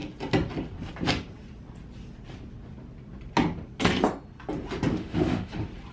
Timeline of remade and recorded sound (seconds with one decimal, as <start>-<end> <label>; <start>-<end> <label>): 0.0-4.9 recorded; 4.9-5.5 remade; 5.5-5.9 recorded